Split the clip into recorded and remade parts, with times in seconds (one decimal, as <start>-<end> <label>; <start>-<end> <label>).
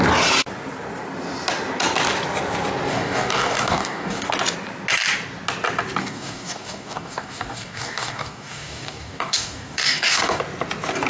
0.0-2.9 recorded; 2.9-4.3 remade; 4.3-6.0 recorded; 6.0-10.4 remade; 10.4-11.1 recorded